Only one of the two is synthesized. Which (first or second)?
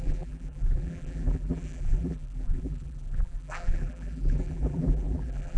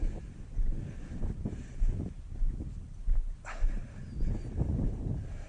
first